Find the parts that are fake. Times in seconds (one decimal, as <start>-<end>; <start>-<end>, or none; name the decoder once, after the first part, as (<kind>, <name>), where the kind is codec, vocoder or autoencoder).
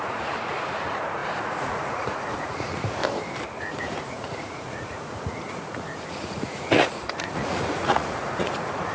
0.0-3.0 (vocoder, Vocos); 3.6-8.9